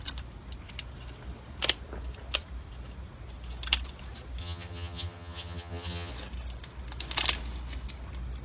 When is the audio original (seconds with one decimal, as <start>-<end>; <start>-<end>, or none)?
0.0-4.4; 6.1-8.4